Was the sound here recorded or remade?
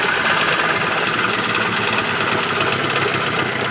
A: recorded